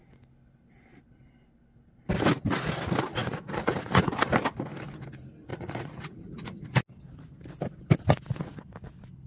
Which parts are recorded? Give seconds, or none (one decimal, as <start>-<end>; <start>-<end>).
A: 0.0-3.1; 4.3-5.5; 6.6-9.3